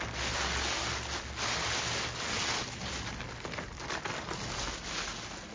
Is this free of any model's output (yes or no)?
yes